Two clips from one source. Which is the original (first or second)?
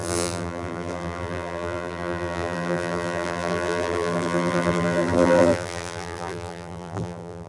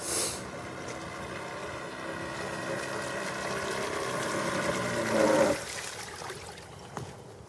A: second